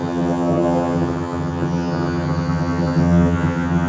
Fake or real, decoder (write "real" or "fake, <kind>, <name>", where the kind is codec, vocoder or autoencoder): fake, vocoder, HiFi-GAN